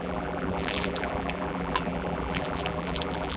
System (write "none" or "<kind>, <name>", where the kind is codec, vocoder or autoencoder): vocoder, BigVGAN v2